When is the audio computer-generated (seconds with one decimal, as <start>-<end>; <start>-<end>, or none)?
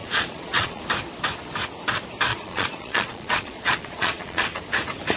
0.0-0.8; 2.3-4.6